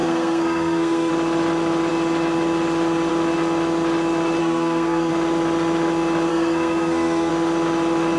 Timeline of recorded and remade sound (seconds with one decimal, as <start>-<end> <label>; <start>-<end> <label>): 0.0-1.1 remade; 1.1-4.4 recorded; 4.4-5.1 remade; 5.1-6.3 recorded; 6.3-7.3 remade; 7.3-8.2 recorded